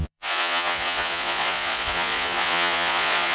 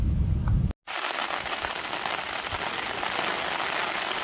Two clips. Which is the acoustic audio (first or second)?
second